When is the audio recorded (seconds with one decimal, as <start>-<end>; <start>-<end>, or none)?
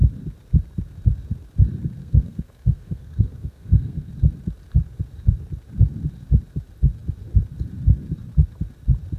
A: 0.0-2.0; 4.1-9.2